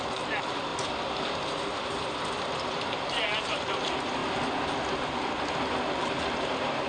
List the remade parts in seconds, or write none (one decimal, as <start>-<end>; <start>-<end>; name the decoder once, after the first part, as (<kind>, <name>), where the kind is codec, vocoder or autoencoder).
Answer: 0.0-0.7 (vocoder, BigVGAN v2); 2.5-4.2; 6.0-6.9